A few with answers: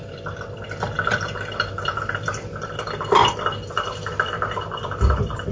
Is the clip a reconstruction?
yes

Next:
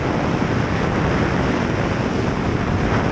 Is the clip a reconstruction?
no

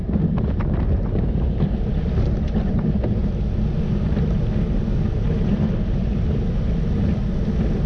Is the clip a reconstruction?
no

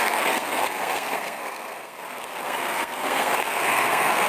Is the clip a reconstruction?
yes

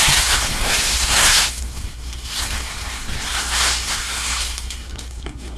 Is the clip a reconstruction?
yes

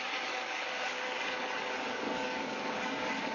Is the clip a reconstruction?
yes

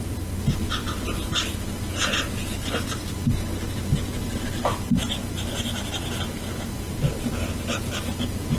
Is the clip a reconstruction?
no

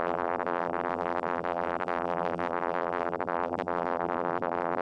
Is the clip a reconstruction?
yes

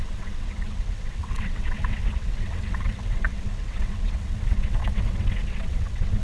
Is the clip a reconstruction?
yes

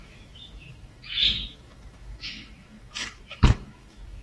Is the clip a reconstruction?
yes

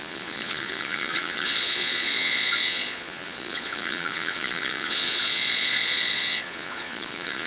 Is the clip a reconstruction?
yes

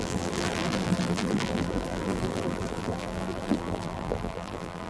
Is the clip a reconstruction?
yes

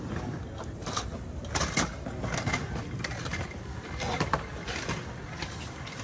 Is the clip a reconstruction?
no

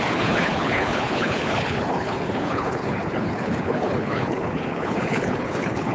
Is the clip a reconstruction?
yes